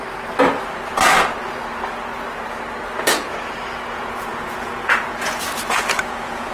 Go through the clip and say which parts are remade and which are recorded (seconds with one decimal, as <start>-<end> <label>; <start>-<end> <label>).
0.0-3.9 recorded; 3.9-6.5 remade

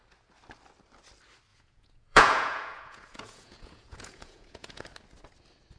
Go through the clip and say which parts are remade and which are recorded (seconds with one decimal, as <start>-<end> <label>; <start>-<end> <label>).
0.0-1.5 recorded; 1.5-4.8 remade; 4.8-5.8 recorded

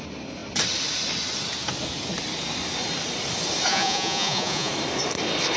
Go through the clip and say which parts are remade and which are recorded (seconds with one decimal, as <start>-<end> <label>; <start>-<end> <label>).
0.0-3.7 recorded; 3.7-4.7 remade; 4.7-5.6 recorded

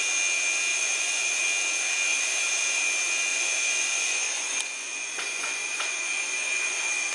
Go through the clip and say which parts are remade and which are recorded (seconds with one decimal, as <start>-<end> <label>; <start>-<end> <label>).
0.0-0.7 recorded; 0.7-1.4 remade; 1.4-2.1 recorded; 2.1-2.8 remade; 2.8-3.3 recorded; 3.3-7.1 remade

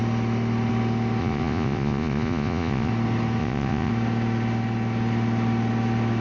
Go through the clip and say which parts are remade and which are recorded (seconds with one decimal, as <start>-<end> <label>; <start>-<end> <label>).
0.0-1.2 recorded; 1.2-2.9 remade; 2.9-3.4 recorded; 3.4-3.9 remade; 3.9-6.2 recorded

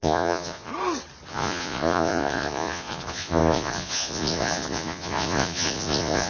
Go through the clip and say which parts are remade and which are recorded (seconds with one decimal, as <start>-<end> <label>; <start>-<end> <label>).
0.0-0.7 remade; 0.7-1.3 recorded; 1.3-6.3 remade